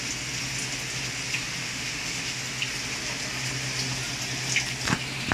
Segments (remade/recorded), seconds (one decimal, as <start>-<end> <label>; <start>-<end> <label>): 0.0-1.6 recorded; 1.6-2.4 remade; 2.4-5.3 recorded